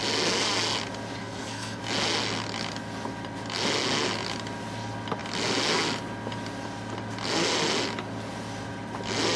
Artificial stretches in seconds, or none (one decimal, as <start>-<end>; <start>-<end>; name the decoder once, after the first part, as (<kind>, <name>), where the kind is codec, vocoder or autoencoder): 1.2-1.8 (codec, SNAC)